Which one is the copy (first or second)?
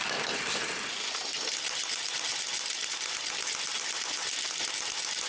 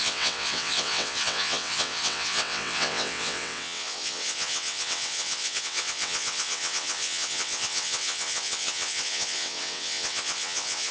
second